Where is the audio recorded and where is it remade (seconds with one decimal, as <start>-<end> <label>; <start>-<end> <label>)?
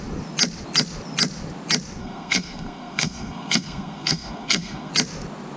0.0-2.0 recorded; 2.0-4.9 remade; 4.9-5.6 recorded